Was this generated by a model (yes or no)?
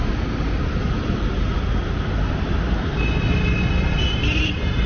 no